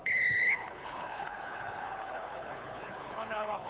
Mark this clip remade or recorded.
remade